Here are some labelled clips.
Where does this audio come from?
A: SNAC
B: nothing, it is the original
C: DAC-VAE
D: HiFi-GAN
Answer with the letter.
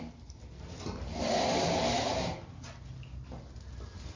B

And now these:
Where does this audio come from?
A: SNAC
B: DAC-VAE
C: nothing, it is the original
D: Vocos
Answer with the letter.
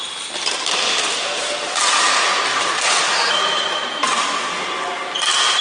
C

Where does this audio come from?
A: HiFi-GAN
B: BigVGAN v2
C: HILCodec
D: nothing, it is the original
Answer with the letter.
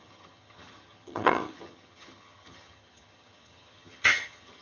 A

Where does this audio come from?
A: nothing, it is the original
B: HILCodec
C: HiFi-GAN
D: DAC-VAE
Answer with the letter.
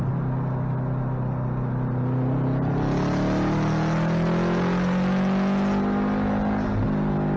A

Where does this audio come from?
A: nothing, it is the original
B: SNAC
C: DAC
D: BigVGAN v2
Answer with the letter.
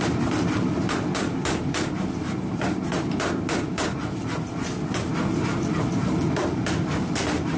D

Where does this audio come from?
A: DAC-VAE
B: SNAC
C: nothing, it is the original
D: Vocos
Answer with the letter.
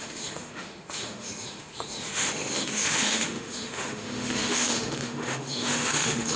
A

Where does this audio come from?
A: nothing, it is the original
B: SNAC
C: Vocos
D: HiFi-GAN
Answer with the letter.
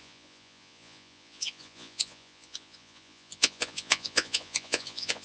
C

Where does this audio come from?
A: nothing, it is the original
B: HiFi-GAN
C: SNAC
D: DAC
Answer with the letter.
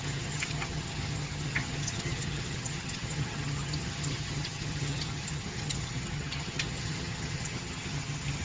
B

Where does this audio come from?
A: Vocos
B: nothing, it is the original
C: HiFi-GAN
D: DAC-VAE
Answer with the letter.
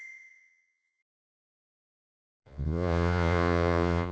A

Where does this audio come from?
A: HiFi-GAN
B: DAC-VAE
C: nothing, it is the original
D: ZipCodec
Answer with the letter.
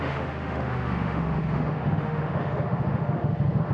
B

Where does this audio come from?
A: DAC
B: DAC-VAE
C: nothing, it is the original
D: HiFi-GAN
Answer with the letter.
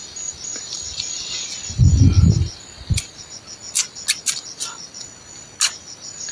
C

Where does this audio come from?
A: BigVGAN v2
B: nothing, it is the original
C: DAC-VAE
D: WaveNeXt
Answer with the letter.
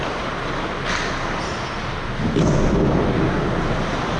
B